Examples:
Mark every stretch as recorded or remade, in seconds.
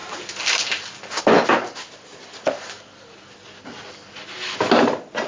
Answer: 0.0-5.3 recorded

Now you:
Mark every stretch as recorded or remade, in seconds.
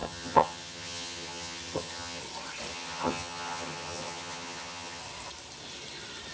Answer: 0.0-2.2 remade; 2.2-2.7 recorded; 2.7-5.0 remade; 5.0-6.3 recorded